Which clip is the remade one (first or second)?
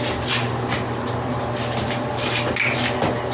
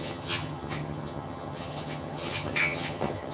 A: second